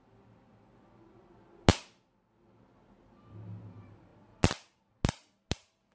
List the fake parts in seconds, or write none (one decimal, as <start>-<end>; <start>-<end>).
none

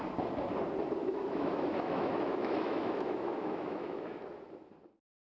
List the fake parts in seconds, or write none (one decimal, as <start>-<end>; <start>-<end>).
1.0-4.2

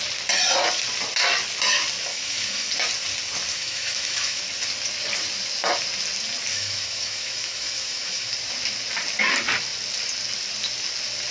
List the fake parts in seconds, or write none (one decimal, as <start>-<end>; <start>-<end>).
2.1-2.7; 3.5-4.4; 6.5-8.3

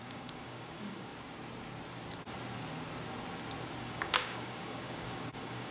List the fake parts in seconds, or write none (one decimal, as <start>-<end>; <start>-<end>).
0.0-1.1; 3.8-5.7

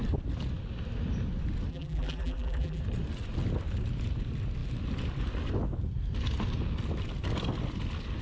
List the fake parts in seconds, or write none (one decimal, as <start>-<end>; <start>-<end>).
1.7-2.8

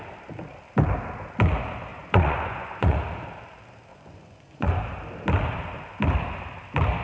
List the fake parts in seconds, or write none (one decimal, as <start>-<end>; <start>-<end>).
1.9-3.0; 3.9-4.8

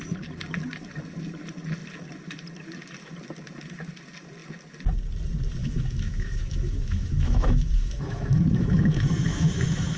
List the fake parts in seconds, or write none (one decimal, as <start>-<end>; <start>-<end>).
5.6-10.0

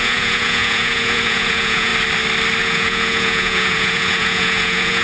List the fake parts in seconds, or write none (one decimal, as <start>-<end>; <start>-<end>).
0.0-1.9; 2.6-5.0